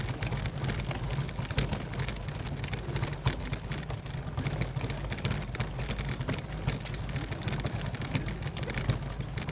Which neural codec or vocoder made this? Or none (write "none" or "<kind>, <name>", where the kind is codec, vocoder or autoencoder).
none